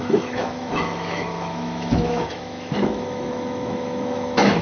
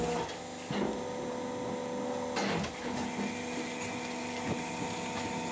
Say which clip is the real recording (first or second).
second